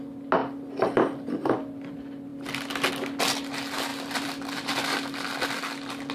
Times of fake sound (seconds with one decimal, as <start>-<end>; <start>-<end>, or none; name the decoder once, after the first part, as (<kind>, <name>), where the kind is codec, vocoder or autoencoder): 0.4-1.9 (vocoder, BigVGAN v2); 3.9-4.7